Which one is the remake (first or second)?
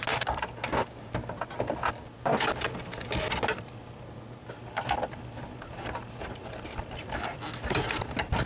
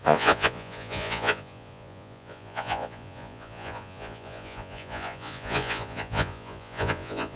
second